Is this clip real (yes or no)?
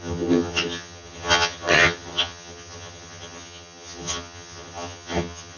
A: no